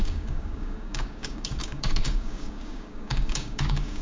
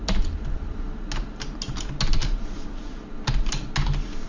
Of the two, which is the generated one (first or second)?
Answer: first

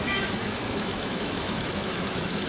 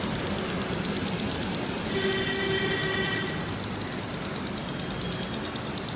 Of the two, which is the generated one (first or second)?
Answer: first